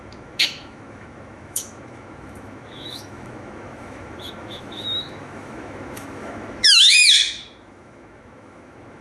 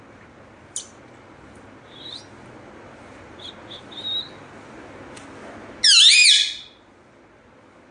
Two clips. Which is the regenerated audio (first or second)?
first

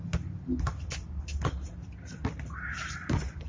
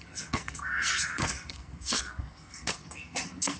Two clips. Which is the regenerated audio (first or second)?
second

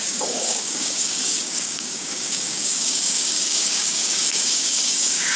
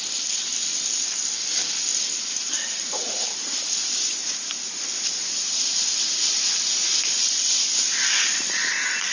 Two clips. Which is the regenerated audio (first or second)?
first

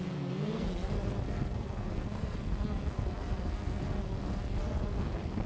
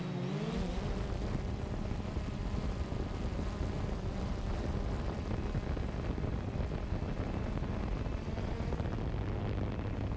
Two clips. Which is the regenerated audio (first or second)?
first